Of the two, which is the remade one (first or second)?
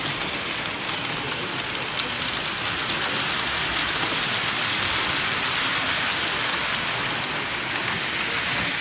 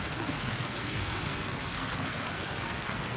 second